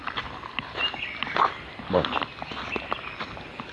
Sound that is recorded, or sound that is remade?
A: recorded